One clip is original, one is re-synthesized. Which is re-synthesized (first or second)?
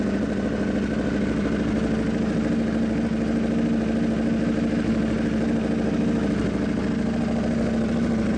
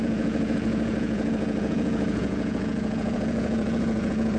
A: second